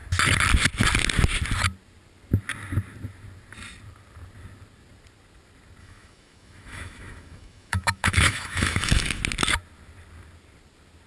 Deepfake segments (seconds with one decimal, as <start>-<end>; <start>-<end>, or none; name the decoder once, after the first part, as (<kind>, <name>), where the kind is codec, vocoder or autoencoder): 5.8-9.2 (autoencoder, DAC-VAE)